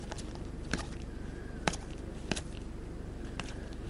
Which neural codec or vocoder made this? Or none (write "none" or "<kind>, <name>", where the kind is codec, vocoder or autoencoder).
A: none